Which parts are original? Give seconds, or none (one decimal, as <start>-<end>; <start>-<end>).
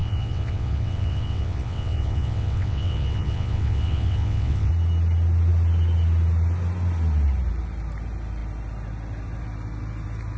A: 4.7-10.4